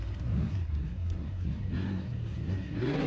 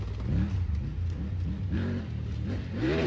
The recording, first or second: second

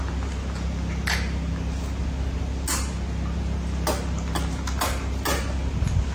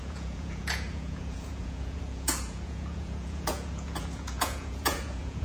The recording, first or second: first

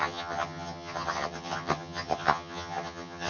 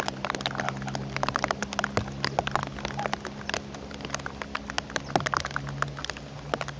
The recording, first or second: second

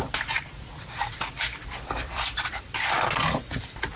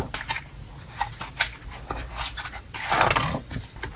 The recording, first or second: second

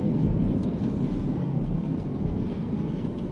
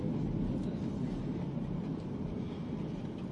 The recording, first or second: second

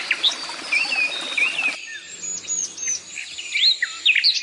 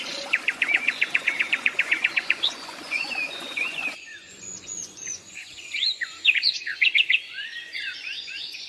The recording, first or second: first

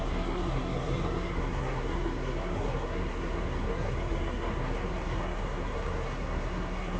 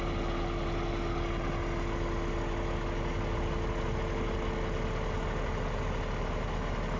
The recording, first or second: second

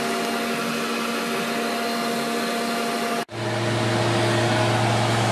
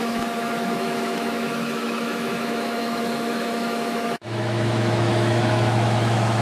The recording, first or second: first